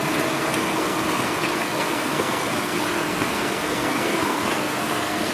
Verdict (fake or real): fake